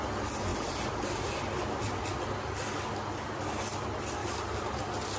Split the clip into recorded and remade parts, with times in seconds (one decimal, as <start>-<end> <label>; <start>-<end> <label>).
0.0-0.5 recorded; 0.5-1.6 remade; 1.6-4.2 recorded; 4.2-4.8 remade; 4.8-5.2 recorded